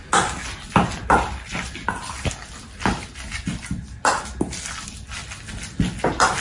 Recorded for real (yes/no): yes